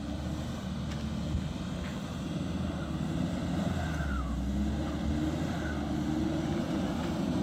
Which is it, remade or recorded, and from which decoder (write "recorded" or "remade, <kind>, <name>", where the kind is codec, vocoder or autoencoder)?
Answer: recorded